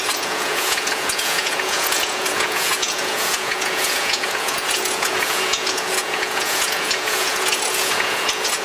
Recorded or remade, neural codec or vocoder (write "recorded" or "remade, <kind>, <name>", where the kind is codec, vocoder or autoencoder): remade, vocoder, Vocos